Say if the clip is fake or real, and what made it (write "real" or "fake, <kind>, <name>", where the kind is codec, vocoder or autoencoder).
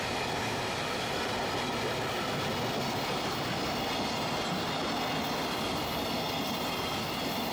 real